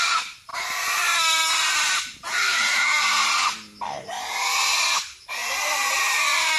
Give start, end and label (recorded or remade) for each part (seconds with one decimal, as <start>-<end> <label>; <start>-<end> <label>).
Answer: 0.0-6.6 recorded